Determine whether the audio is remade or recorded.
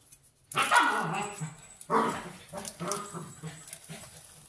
recorded